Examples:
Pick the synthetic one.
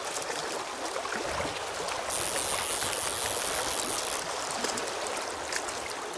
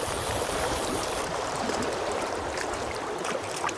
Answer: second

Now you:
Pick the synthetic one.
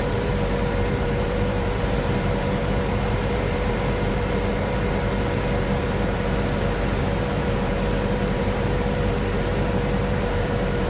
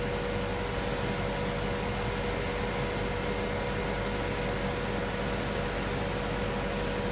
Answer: first